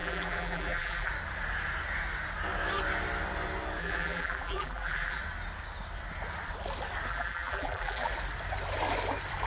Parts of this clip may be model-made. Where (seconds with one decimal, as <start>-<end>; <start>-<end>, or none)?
0.0-1.1; 3.8-5.2; 7.1-8.1